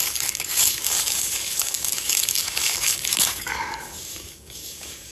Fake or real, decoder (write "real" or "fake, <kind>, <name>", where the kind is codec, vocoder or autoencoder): fake, codec, DAC